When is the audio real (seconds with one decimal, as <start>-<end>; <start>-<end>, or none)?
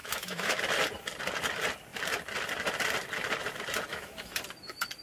0.6-3.9; 4.4-5.0